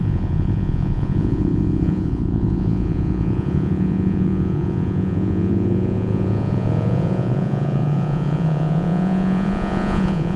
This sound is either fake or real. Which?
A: fake